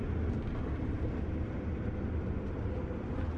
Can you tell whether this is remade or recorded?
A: recorded